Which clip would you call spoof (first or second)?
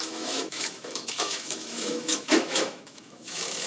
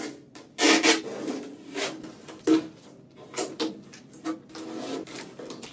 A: first